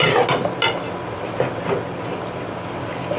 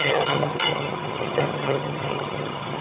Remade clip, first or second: second